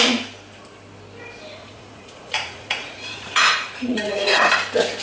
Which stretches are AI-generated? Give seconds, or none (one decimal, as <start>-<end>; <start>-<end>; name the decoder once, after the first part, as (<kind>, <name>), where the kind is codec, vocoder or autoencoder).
1.6-4.5 (vocoder, Vocos)